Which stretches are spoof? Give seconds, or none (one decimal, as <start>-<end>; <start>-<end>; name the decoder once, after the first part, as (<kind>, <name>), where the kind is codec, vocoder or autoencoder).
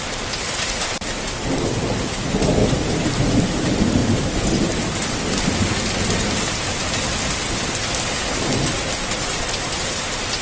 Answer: none